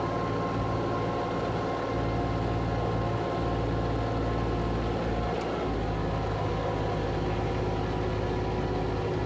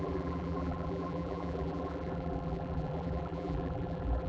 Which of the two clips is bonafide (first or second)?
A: first